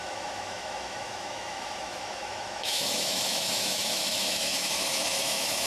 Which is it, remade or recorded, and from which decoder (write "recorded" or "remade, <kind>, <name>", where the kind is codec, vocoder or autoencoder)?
remade, autoencoder, DAC-VAE